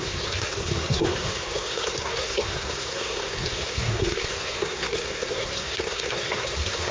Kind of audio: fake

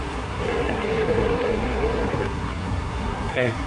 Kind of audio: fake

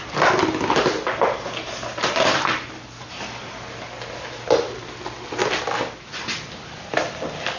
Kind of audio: real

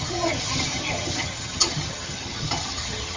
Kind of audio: fake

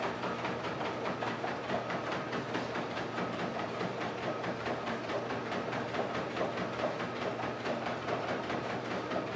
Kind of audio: fake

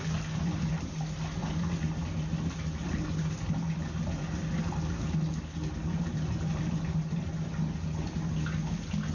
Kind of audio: real